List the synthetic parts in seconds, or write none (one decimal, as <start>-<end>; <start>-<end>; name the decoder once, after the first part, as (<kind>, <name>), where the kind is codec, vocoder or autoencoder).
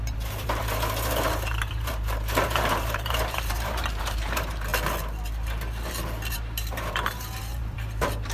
0.0-4.7 (vocoder, BigVGAN v2); 5.9-8.3